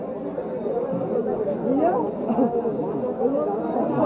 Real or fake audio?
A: real